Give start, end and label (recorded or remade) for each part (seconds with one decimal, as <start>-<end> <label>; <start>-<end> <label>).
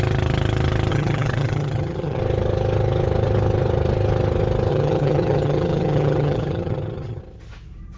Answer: 0.0-0.9 recorded; 0.9-2.2 remade; 2.2-4.7 recorded; 4.7-7.2 remade; 7.2-8.0 recorded